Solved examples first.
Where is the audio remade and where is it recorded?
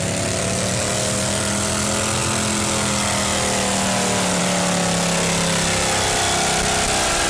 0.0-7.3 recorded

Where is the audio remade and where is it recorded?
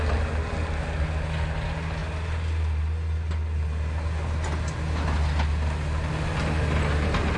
0.0-7.4 recorded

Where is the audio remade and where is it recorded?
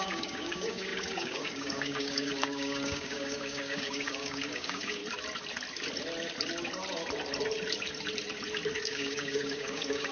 0.0-5.0 remade; 5.0-8.8 recorded; 8.8-10.1 remade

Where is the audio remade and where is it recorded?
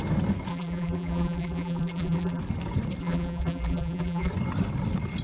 0.0-0.5 recorded; 0.5-2.4 remade; 2.4-3.0 recorded; 3.0-4.3 remade; 4.3-5.2 recorded